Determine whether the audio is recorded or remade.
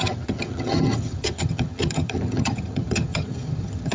remade